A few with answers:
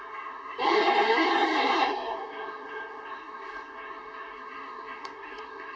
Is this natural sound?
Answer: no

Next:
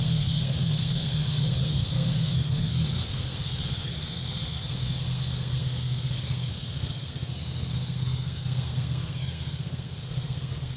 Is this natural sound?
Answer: no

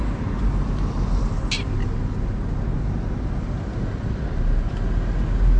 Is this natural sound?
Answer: yes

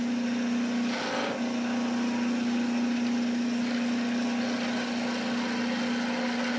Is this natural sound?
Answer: yes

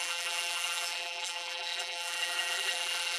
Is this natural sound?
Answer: no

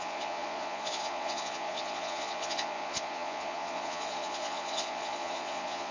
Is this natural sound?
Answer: no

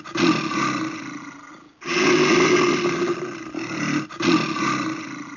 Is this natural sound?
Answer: yes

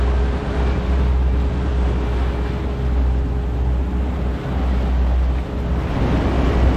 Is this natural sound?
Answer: yes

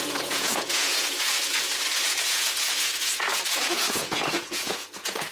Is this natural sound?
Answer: no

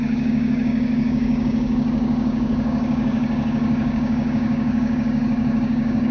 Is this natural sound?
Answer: no